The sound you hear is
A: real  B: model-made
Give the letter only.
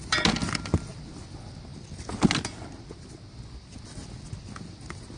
A